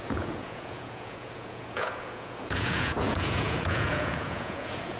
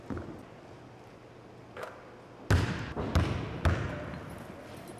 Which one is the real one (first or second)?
second